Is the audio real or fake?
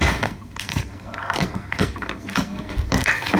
fake